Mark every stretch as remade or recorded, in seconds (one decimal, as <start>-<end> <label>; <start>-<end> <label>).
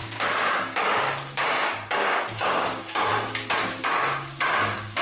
0.0-0.5 recorded; 0.5-3.1 remade; 3.1-3.8 recorded; 3.8-5.0 remade